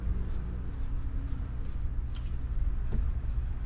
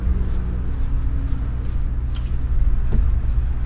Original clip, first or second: second